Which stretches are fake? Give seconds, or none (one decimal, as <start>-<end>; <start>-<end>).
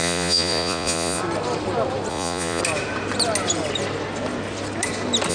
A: 0.0-1.2; 2.1-2.6